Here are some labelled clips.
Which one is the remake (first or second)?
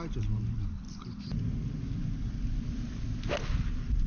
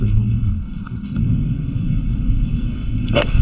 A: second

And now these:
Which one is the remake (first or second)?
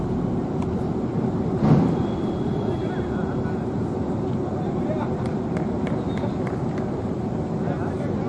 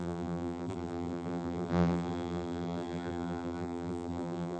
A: second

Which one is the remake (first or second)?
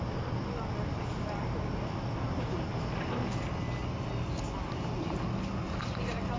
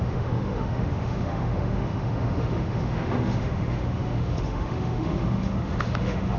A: second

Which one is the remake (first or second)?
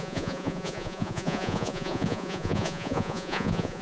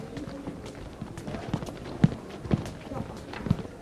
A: first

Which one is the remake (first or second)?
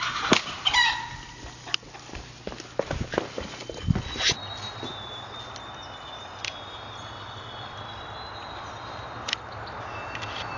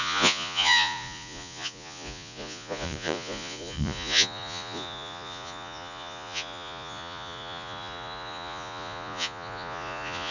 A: second